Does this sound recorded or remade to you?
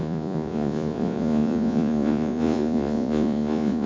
remade